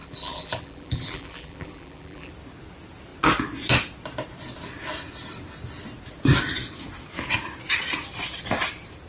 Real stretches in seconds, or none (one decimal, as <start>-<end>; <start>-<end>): 2.3-9.1